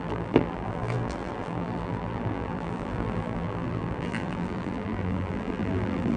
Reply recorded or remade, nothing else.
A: remade